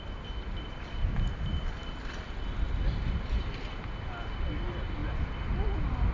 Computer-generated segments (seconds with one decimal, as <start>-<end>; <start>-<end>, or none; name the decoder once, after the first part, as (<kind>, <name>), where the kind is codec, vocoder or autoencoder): none